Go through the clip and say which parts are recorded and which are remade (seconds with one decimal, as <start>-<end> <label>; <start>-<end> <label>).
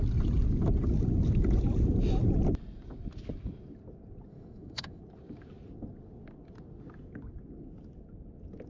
0.0-4.3 recorded; 4.3-5.0 remade; 5.0-8.7 recorded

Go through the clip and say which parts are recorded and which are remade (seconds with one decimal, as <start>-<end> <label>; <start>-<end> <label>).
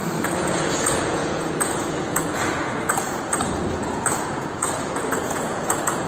0.0-6.1 remade